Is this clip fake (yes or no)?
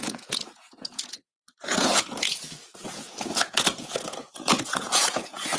yes